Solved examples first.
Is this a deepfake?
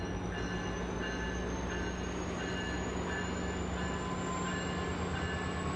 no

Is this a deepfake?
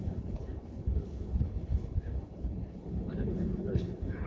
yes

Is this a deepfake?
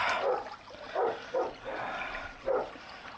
no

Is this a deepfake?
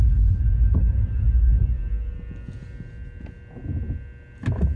no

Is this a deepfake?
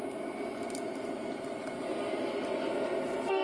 no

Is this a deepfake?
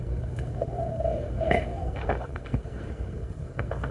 yes